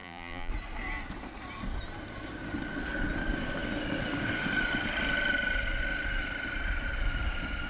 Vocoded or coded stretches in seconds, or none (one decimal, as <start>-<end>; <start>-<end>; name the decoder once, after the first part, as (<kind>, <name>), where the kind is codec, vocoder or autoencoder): 0.0-0.5 (vocoder, BigVGAN v2)